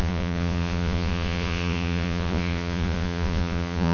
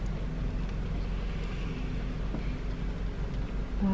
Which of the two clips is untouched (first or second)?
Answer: second